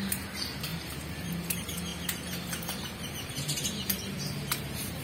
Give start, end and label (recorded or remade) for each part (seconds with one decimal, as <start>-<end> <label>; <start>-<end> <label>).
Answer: 0.0-5.0 remade